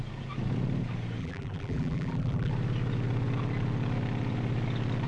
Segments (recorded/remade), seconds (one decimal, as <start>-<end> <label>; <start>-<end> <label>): 0.0-1.2 recorded; 1.2-2.5 remade; 2.5-5.1 recorded